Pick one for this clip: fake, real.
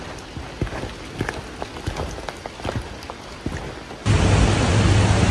real